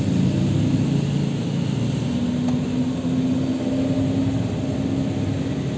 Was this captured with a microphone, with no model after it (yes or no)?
yes